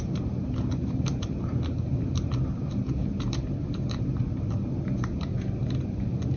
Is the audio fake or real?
fake